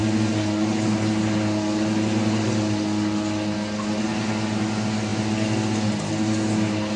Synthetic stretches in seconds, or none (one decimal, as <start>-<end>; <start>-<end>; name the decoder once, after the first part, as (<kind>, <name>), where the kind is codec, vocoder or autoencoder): none